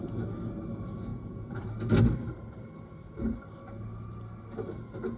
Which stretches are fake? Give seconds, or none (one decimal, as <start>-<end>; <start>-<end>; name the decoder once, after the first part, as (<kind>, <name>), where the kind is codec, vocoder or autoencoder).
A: 1.1-1.6 (vocoder, Vocos)